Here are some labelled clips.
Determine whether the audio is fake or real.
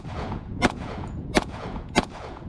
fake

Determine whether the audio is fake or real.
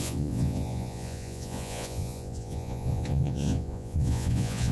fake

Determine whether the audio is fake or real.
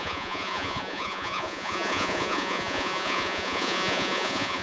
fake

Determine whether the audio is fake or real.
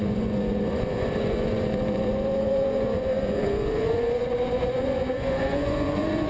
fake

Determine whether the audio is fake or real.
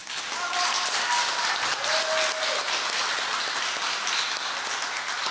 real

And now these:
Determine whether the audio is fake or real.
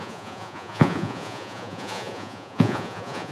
fake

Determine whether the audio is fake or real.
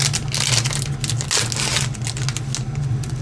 real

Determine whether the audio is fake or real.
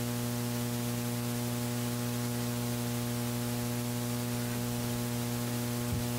real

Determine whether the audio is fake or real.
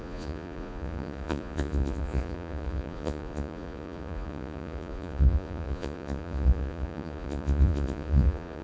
fake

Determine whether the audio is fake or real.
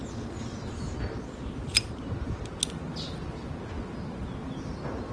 real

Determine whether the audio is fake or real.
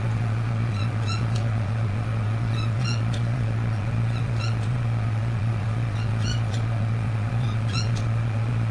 fake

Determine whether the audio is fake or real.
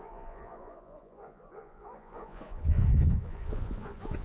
fake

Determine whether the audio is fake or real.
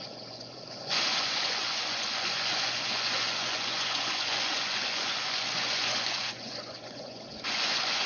fake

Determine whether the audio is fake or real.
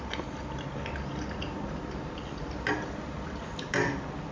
real